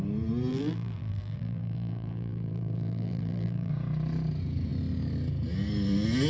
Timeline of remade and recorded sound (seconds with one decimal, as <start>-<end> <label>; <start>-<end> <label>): 0.0-0.5 recorded; 0.5-3.7 remade; 3.7-6.3 recorded